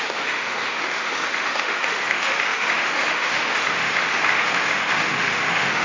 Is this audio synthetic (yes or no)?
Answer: yes